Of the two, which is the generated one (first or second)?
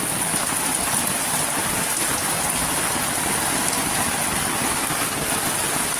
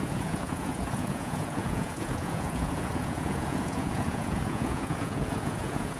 second